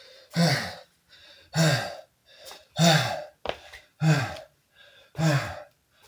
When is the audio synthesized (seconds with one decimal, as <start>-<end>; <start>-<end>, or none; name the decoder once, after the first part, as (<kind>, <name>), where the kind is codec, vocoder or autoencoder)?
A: none